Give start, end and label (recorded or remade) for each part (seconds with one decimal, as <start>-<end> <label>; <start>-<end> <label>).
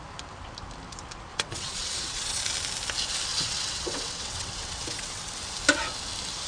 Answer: 0.0-1.3 recorded; 1.3-2.4 remade; 2.4-3.3 recorded; 3.3-5.2 remade; 5.2-6.5 recorded